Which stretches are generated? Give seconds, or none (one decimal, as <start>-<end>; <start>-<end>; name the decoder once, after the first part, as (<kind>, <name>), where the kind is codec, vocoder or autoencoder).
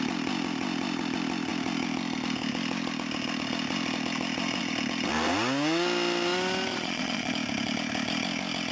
6.7-7.3 (vocoder, Vocos)